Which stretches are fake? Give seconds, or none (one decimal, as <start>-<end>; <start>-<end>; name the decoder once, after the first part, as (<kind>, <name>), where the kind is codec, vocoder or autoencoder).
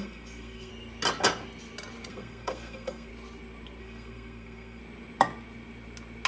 0.0-0.7 (codec, SNAC); 2.1-3.1; 3.8-4.8